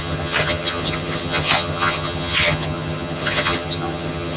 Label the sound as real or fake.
fake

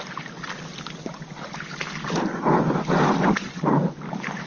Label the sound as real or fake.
real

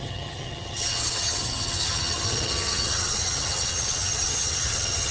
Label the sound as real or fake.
fake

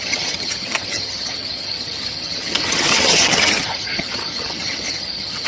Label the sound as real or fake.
fake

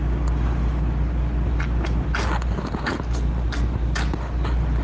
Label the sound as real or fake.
real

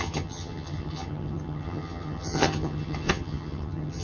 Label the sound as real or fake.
fake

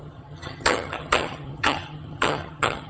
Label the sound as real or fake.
fake